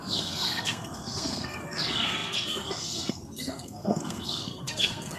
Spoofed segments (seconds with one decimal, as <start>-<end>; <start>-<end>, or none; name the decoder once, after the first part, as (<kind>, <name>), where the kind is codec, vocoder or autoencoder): 0.0-5.2 (codec, SNAC)